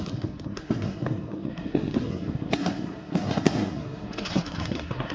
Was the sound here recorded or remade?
remade